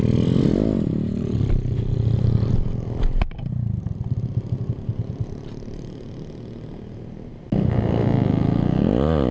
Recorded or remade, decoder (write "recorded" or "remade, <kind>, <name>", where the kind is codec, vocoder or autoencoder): recorded